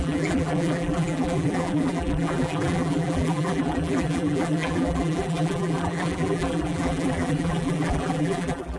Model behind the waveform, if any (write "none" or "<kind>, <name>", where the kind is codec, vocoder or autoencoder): vocoder, BigVGAN v2